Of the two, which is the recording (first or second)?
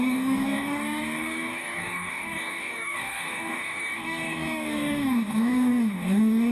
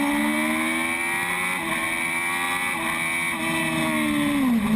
second